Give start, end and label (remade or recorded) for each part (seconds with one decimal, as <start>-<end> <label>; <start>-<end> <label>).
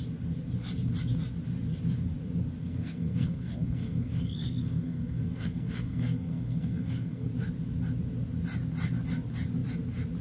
0.0-2.6 recorded; 2.6-7.3 remade; 7.3-10.2 recorded